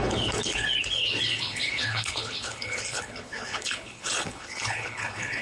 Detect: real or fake fake